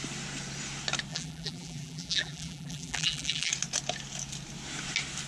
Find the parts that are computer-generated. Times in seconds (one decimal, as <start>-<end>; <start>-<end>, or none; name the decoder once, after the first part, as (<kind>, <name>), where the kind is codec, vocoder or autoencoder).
1.1-3.5 (vocoder, BigVGAN v2)